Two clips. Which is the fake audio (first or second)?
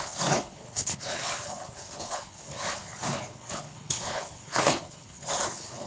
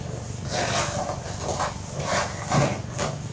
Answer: first